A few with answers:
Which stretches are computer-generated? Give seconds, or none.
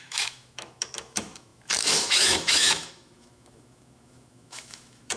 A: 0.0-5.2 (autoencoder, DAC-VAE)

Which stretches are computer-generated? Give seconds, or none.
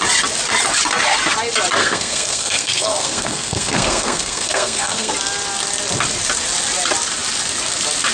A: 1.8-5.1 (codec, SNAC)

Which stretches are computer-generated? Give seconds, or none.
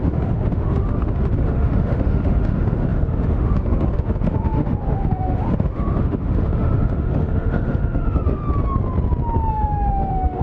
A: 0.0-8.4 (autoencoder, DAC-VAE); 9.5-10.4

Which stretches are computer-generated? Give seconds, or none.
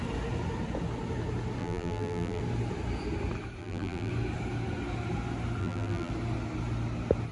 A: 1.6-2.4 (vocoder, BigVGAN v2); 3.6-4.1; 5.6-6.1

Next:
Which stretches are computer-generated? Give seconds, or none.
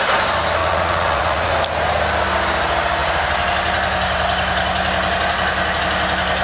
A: 0.6-1.5 (vocoder, Vocos)